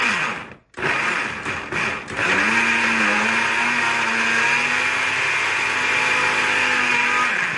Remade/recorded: recorded